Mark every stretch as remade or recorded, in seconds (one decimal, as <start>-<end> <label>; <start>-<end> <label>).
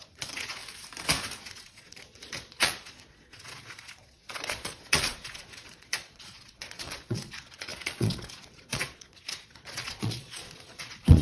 0.0-0.6 remade; 0.6-1.4 recorded; 1.4-11.2 remade